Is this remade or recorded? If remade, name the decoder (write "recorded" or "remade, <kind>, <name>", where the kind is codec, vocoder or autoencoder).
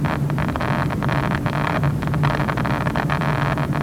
recorded